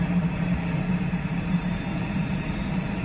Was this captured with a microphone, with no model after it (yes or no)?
no